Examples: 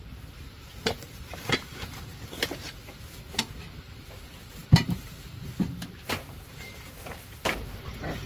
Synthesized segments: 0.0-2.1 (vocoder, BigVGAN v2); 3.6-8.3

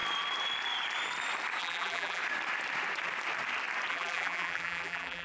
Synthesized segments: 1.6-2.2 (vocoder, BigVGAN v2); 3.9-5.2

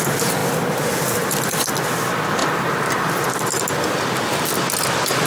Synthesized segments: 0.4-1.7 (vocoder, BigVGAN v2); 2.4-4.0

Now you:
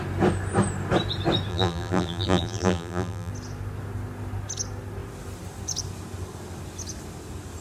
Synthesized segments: 1.5-3.3 (vocoder, BigVGAN v2)

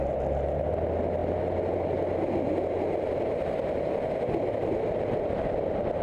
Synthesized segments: none